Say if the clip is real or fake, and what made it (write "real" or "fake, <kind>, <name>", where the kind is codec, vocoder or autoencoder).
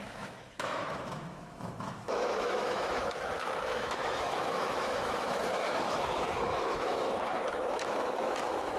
fake, autoencoder, DAC-VAE